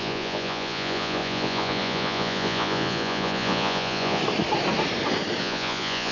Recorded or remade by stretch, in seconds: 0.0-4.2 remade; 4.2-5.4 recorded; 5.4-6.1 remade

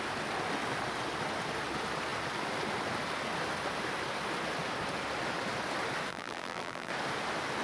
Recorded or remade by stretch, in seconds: 0.0-6.1 recorded; 6.1-6.9 remade; 6.9-7.6 recorded

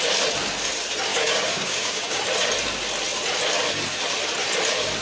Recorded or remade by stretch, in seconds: 0.0-1.1 recorded; 1.1-2.2 remade; 2.2-5.0 recorded

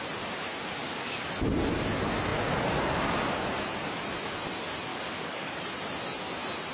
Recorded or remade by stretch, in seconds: 0.0-0.8 recorded; 0.8-1.3 remade; 1.3-4.9 recorded; 4.9-5.6 remade; 5.6-6.7 recorded

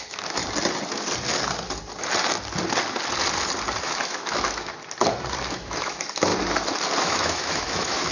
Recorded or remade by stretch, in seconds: 0.0-0.4 remade; 0.4-3.8 recorded; 3.8-4.7 remade; 4.7-5.5 recorded; 5.5-6.3 remade; 6.3-7.0 recorded; 7.0-8.1 remade

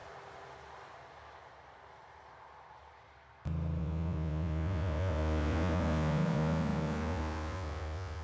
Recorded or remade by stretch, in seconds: 0.0-3.8 recorded; 3.8-8.2 remade

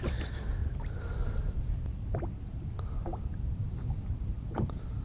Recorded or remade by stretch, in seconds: 0.0-0.6 recorded; 0.6-1.8 remade; 1.8-3.1 recorded; 3.1-4.1 remade; 4.1-5.0 recorded

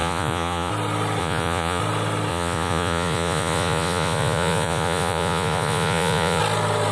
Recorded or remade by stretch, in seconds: 0.0-0.7 remade; 0.7-1.2 recorded; 1.2-1.8 remade; 1.8-2.3 recorded; 2.3-6.4 remade; 6.4-6.9 recorded